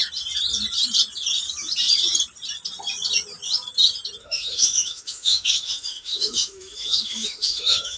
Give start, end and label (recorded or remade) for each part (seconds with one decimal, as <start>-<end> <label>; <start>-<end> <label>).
0.0-4.2 recorded; 4.2-8.0 remade